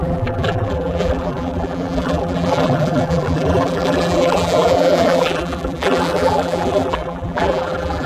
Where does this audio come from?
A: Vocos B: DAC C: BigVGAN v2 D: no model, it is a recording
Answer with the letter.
C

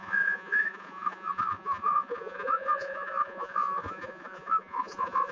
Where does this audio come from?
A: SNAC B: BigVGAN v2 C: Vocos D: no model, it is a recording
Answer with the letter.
C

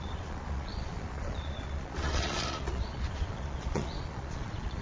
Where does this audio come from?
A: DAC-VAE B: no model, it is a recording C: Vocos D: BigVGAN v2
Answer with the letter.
C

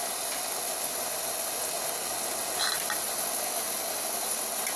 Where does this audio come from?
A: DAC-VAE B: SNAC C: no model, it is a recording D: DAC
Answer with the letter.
C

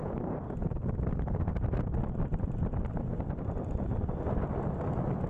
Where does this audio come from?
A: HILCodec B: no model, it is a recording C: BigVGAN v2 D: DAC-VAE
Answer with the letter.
B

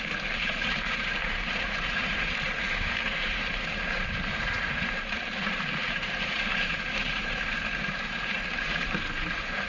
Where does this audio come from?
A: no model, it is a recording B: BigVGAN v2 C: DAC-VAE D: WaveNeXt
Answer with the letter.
B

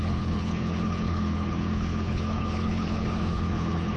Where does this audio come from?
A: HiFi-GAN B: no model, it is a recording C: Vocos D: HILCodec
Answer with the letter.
D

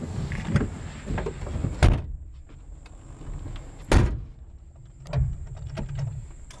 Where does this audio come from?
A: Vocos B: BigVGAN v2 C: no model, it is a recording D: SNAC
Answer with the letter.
C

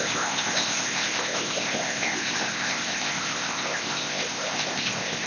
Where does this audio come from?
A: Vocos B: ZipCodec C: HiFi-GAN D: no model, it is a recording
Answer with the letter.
B